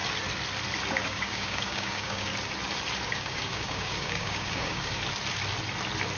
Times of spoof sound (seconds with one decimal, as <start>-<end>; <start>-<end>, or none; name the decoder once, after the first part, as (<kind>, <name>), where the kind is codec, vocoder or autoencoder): 0.9-2.3 (codec, DAC); 3.1-4.9